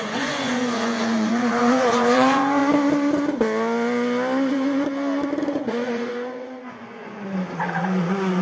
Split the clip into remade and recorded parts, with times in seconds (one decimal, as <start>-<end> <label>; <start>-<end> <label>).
0.0-2.6 remade; 2.6-4.5 recorded; 4.5-4.9 remade; 4.9-5.4 recorded; 5.4-8.4 remade